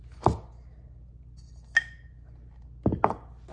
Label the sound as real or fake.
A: real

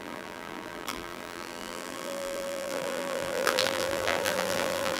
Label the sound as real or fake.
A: fake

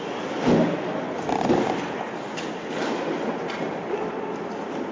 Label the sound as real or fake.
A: real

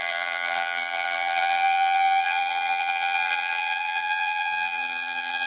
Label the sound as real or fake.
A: fake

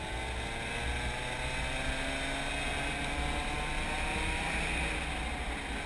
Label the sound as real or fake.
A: real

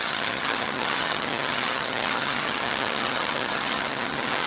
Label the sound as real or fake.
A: fake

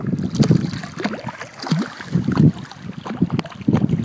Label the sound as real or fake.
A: real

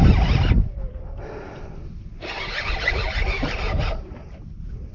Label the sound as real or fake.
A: real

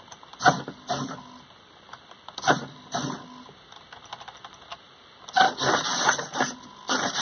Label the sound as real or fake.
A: real